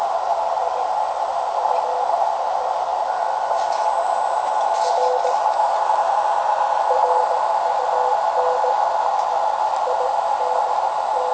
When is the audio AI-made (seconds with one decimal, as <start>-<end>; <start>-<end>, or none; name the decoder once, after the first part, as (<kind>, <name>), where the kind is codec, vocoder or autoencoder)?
none